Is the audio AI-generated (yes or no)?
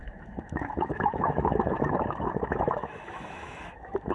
yes